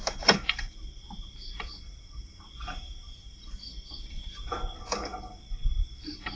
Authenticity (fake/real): fake